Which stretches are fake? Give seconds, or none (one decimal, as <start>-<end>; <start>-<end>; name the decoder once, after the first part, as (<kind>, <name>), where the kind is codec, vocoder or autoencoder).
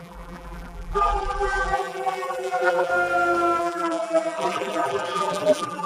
0.0-2.9 (vocoder, BigVGAN v2); 3.6-5.9